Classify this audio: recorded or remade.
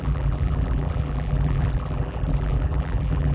remade